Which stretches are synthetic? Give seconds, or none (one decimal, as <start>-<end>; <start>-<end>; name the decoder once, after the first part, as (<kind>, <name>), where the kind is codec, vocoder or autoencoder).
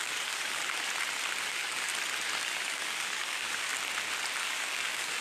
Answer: 0.0-0.6 (codec, DAC); 1.4-1.9; 2.4-3.7; 4.4-5.2